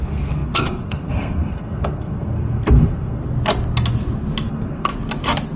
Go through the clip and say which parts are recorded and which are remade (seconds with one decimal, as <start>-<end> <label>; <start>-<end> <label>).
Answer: 0.0-3.2 remade; 3.2-4.5 recorded; 4.5-4.9 remade; 4.9-5.6 recorded

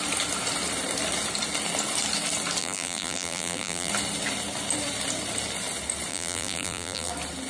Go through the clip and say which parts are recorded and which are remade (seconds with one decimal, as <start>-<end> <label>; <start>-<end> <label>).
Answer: 0.0-2.6 recorded; 2.6-3.9 remade; 3.9-6.1 recorded; 6.1-7.1 remade; 7.1-7.5 recorded

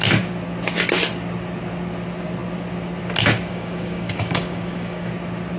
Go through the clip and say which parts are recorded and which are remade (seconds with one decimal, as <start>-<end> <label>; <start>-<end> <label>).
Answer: 0.0-3.5 recorded; 3.5-5.1 remade; 5.1-5.6 recorded

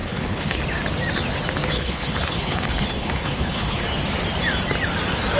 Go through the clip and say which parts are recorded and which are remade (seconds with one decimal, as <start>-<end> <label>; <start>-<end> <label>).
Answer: 0.0-0.6 remade; 0.6-1.7 recorded; 1.7-3.8 remade; 3.8-5.4 recorded

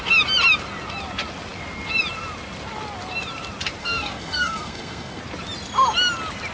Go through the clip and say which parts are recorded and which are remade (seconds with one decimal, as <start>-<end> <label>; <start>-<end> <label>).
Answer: 0.0-3.8 recorded; 3.8-5.2 remade; 5.2-6.5 recorded